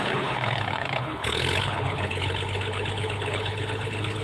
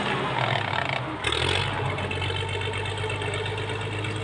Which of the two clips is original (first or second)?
second